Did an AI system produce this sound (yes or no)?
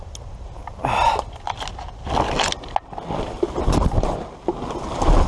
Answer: no